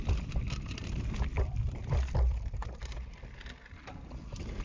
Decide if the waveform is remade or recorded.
recorded